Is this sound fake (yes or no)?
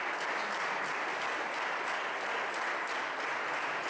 no